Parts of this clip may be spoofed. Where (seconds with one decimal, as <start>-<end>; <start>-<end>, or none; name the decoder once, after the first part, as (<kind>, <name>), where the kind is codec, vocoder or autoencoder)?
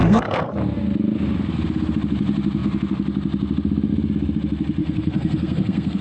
0.0-0.5 (codec, SNAC); 4.8-6.0